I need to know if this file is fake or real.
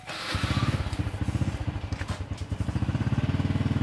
real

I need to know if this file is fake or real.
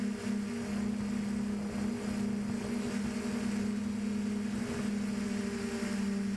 real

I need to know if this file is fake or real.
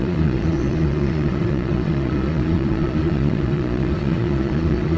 fake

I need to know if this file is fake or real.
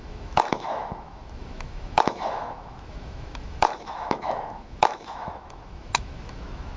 fake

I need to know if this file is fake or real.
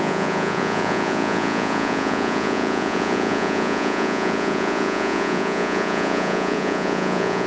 fake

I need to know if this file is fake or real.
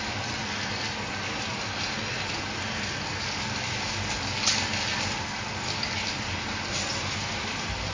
real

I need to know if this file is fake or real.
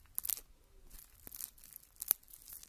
real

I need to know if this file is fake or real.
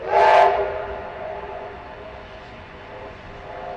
fake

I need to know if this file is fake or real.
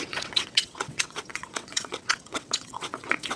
fake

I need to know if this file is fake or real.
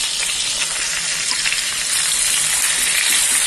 real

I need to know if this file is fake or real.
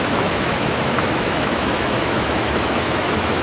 fake